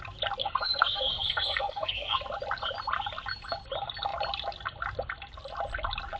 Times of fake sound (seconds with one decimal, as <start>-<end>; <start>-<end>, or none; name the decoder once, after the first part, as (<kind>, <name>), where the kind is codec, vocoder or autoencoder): 0.4-2.2 (codec, SNAC)